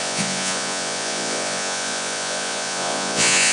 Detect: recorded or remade remade